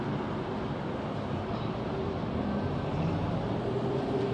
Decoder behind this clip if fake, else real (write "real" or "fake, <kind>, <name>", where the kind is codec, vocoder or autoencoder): real